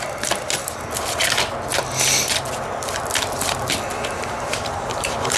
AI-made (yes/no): no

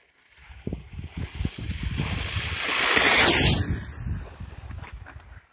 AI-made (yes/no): no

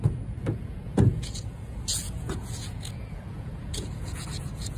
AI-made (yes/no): yes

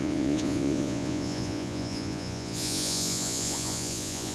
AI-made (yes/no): yes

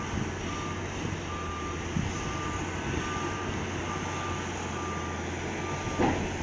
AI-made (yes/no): no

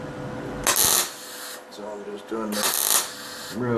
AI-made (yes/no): no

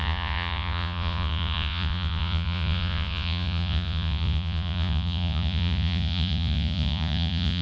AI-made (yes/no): yes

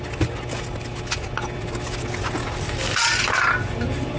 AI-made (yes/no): no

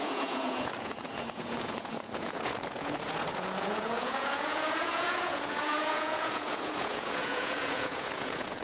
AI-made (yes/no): yes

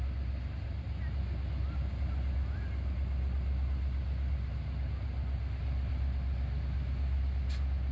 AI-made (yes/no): no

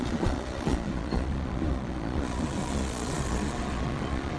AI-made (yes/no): yes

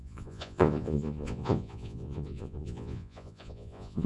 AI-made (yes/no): yes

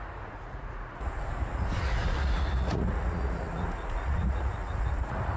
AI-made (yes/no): yes